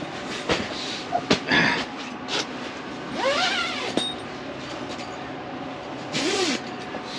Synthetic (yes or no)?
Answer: no